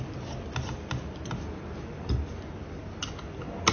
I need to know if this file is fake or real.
real